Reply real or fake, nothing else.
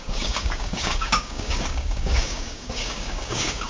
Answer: fake